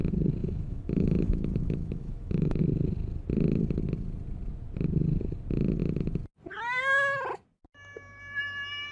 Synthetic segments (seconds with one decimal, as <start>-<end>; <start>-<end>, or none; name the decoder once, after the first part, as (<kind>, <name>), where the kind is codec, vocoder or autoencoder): 0.4-2.6 (autoencoder, DAC-VAE)